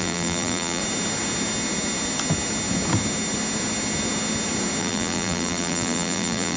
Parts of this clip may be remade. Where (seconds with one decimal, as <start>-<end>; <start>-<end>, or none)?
0.0-0.8; 4.8-6.6